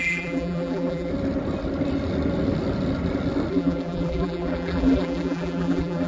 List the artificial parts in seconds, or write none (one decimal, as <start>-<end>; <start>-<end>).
0.0-1.1; 3.5-6.1

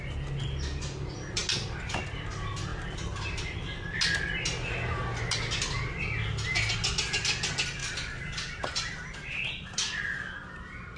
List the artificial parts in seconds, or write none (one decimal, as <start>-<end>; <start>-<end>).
7.8-11.0

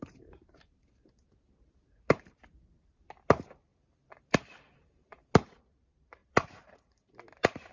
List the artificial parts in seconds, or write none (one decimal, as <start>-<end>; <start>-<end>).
0.0-7.7

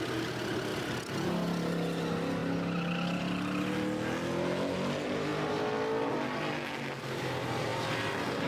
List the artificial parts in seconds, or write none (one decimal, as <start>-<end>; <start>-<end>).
none

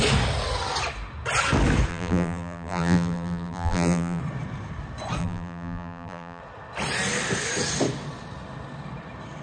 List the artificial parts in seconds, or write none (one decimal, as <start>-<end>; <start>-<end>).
1.9-4.2; 5.2-6.4